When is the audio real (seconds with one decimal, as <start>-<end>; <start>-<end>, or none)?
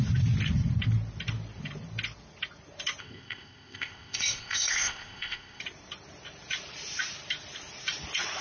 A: 0.0-3.0; 5.6-8.4